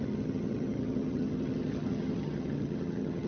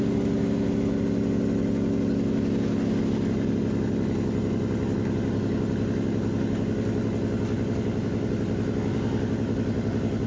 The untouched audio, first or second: second